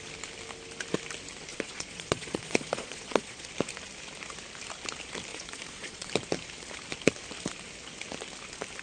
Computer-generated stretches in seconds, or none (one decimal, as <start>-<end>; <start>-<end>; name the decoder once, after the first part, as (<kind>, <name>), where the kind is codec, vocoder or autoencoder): 1.5-3.5 (vocoder, Vocos); 5.3-6.1